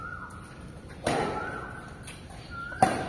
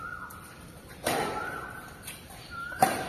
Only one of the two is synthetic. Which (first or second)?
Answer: second